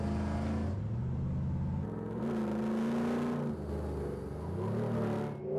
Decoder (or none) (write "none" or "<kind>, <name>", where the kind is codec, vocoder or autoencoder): none